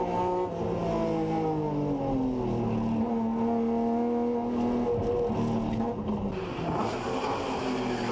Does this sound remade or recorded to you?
recorded